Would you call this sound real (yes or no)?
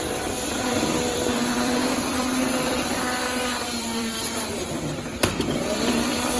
no